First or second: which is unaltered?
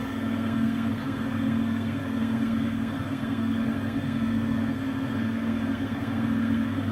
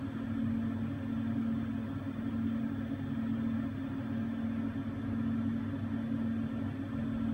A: second